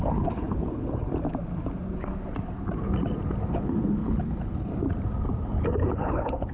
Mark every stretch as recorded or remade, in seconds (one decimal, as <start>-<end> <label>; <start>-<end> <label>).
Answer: 0.0-1.1 remade; 1.1-3.5 recorded; 3.5-4.7 remade; 4.7-5.7 recorded; 5.7-6.5 remade